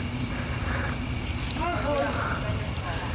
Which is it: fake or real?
real